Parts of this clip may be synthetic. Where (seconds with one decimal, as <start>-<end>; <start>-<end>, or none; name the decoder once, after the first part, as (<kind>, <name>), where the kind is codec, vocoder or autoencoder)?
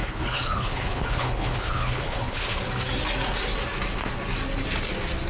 0.0-2.6 (codec, HILCodec)